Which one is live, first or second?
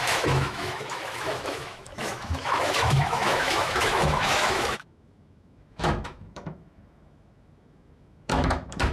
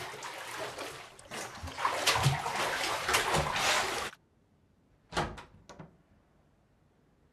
second